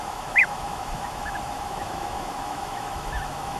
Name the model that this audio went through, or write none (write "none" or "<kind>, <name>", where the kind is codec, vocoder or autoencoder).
autoencoder, DAC-VAE